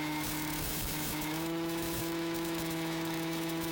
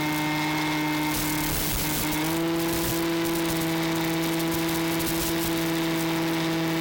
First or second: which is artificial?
first